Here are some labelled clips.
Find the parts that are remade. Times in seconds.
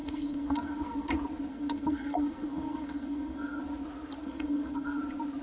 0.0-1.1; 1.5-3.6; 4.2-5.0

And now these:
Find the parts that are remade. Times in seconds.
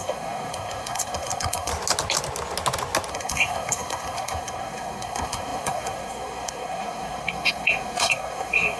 0.0-1.7; 3.1-8.8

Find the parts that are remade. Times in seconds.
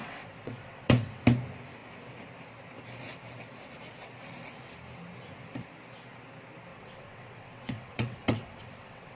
0.0-1.2; 6.7-9.2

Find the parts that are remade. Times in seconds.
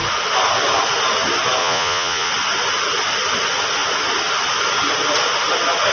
1.6-2.3